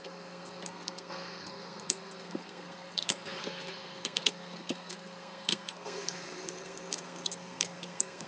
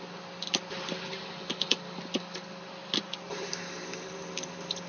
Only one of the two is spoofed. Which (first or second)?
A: first